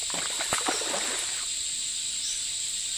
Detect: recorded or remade recorded